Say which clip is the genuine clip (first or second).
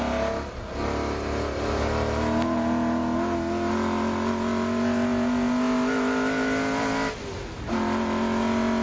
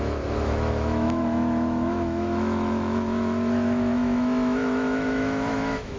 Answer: first